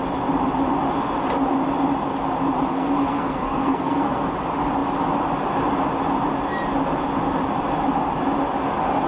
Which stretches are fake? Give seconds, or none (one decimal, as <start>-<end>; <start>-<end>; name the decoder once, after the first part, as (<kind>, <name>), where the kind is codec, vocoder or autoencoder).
2.7-4.3 (codec, SNAC)